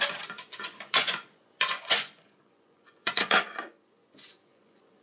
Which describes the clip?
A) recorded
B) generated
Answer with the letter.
B